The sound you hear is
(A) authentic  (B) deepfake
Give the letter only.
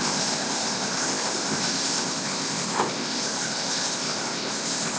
B